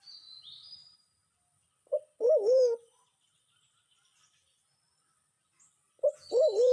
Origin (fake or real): fake